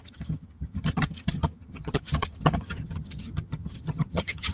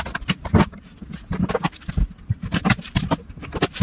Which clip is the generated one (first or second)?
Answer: first